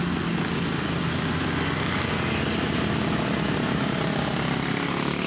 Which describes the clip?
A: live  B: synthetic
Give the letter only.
A